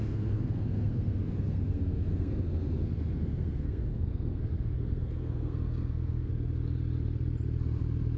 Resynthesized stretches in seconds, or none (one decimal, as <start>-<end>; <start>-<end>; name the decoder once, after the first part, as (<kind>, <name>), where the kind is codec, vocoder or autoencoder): 0.0-6.3 (codec, SNAC)